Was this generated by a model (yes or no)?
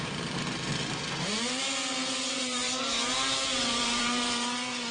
yes